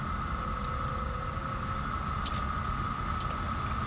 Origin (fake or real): real